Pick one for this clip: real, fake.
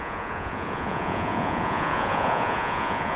fake